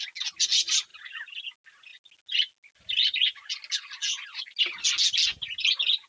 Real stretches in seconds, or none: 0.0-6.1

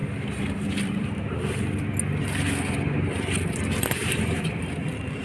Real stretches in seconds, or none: 1.9-4.0; 4.7-5.2

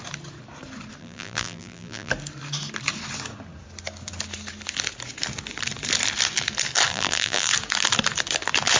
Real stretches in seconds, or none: 0.0-1.0; 2.1-6.9; 7.5-8.8

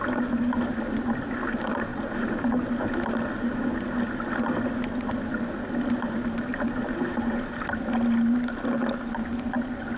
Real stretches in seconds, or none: 0.0-1.9; 2.7-6.5; 7.4-10.0